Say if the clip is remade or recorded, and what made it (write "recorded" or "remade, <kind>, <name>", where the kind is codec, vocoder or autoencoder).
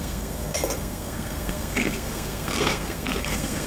remade, codec, SNAC